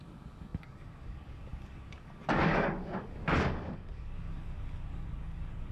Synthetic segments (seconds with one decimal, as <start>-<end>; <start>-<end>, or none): 0.0-5.7